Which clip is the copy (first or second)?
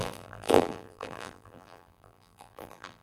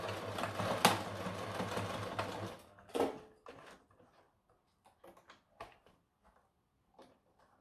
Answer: first